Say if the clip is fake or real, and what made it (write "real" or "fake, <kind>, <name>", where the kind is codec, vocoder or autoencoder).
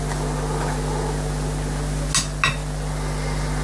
real